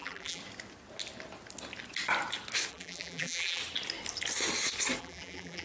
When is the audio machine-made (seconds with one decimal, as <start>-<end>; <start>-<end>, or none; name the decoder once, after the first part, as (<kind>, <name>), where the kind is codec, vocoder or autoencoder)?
0.0-0.4 (vocoder, BigVGAN v2); 2.7-3.6; 5.0-5.6